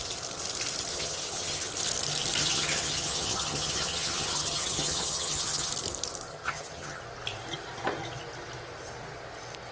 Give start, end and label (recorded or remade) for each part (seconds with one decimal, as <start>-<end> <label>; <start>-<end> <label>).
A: 0.0-0.9 recorded; 0.9-1.7 remade; 1.7-2.4 recorded; 2.4-5.7 remade; 5.7-6.3 recorded; 6.3-7.0 remade; 7.0-9.7 recorded